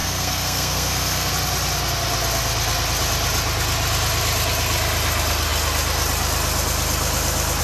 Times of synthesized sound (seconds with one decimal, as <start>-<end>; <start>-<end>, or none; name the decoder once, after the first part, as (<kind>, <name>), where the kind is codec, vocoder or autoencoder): 0.0-1.3 (codec, SNAC)